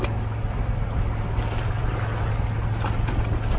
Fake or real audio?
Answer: real